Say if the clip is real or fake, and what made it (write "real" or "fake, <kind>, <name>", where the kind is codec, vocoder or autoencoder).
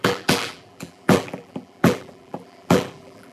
fake, vocoder, BigVGAN v2